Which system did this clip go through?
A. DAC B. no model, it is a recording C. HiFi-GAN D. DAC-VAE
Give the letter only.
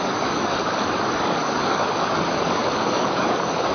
A